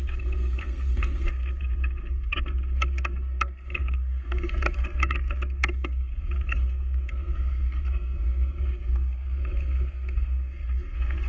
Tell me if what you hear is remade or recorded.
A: remade